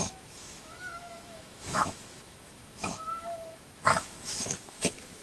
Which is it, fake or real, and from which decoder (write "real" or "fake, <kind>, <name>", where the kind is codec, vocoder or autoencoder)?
fake, autoencoder, DAC-VAE